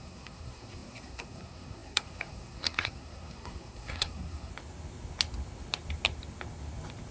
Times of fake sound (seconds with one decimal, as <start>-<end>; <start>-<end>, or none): 0.0-4.5